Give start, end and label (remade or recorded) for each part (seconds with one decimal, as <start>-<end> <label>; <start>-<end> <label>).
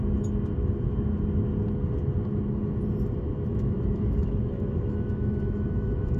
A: 0.0-3.5 recorded; 3.5-6.2 remade